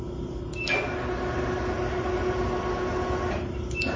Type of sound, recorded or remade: recorded